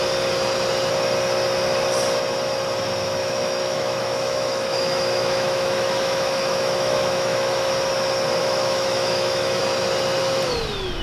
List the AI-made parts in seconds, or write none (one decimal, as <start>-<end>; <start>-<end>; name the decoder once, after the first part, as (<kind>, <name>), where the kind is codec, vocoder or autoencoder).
3.2-7.7 (autoencoder, DAC-VAE); 8.4-9.6